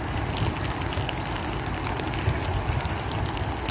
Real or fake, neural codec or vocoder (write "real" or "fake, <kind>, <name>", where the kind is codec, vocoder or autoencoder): real